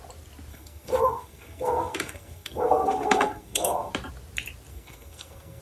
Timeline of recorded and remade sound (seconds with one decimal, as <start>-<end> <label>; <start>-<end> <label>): 0.0-0.5 recorded; 0.5-3.9 remade; 3.9-4.7 recorded; 4.7-5.6 remade